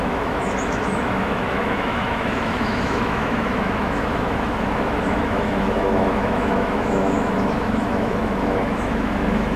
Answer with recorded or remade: remade